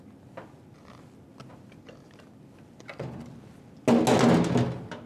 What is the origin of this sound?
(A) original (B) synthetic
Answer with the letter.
A